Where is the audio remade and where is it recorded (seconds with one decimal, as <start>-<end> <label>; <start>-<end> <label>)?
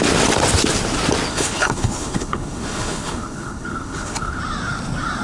0.0-1.3 recorded; 1.3-4.4 remade; 4.4-5.2 recorded